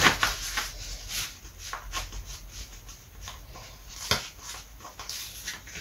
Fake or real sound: real